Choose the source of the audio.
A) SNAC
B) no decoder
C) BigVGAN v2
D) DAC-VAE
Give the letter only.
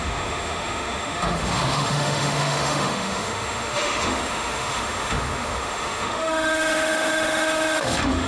D